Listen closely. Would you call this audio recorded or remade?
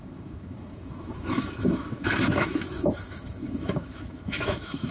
remade